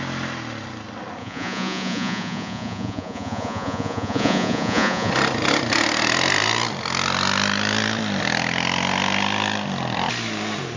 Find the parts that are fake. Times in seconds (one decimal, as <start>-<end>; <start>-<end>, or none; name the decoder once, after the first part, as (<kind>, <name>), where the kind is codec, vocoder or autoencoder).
1.2-5.1 (vocoder, Vocos)